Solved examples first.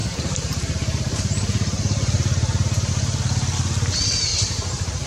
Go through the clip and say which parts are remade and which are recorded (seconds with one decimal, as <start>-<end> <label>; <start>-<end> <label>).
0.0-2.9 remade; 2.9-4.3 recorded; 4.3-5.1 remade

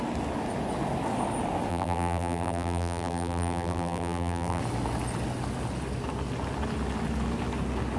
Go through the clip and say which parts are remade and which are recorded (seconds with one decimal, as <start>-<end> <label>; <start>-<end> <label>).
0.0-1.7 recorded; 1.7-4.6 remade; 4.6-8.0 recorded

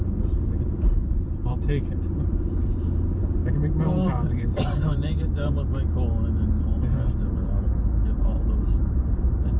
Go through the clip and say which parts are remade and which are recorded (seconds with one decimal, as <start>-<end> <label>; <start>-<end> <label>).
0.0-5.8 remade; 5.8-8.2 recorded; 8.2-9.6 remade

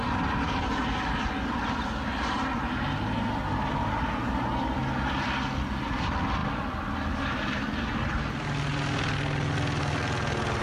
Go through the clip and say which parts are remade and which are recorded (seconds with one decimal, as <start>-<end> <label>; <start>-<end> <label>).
0.0-10.6 recorded